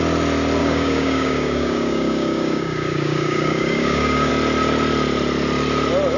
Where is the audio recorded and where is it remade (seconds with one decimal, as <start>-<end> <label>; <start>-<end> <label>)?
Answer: 0.0-0.6 recorded; 0.6-4.3 remade; 4.3-6.2 recorded